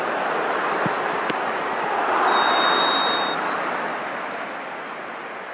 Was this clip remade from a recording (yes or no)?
no